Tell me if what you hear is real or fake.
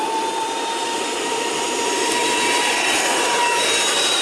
fake